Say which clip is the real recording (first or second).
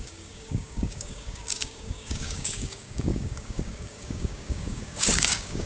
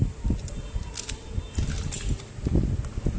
second